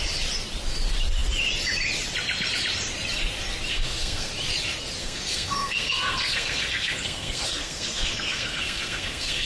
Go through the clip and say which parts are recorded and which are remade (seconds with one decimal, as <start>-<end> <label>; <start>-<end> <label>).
0.0-3.7 recorded; 3.7-4.3 remade; 4.3-5.0 recorded; 5.0-9.5 remade